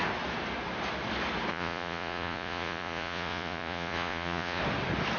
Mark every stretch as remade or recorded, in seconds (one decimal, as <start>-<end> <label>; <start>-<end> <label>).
0.0-1.5 recorded; 1.5-4.6 remade; 4.6-5.2 recorded